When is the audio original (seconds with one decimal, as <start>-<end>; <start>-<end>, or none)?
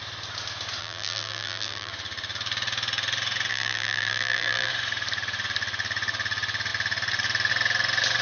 0.0-0.8; 1.9-3.5; 4.7-8.2